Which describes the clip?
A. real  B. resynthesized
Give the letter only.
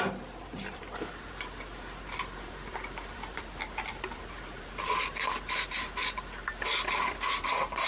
B